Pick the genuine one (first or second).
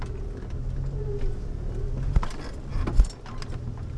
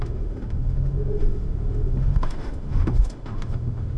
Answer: first